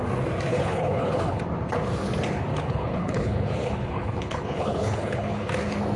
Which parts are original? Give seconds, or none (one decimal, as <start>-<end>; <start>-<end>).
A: 0.0-0.5; 1.4-2.5; 5.5-6.0